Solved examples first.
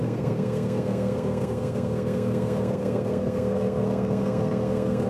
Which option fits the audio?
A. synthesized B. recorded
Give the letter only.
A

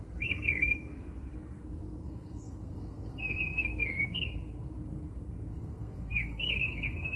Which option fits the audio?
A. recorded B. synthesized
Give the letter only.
B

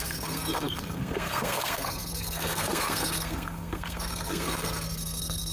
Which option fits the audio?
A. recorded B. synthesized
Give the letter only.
B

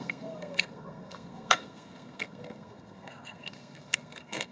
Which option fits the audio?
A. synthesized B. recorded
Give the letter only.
A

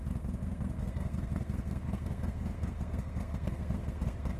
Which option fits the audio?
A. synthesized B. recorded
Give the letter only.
A